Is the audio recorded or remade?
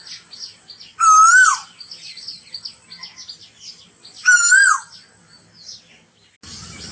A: recorded